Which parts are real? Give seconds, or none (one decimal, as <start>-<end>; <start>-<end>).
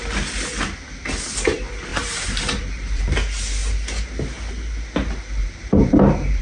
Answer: 0.0-1.9; 3.0-5.4